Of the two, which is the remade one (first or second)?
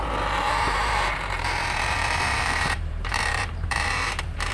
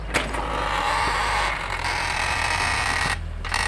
first